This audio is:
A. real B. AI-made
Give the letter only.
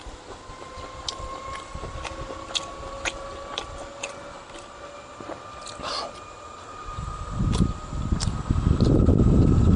A